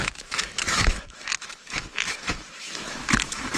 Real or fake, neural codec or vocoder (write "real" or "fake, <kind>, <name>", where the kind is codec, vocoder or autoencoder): fake, autoencoder, DAC-VAE